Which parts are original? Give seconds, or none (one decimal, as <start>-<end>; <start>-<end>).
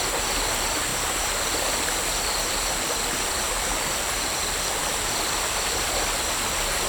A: 0.0-6.9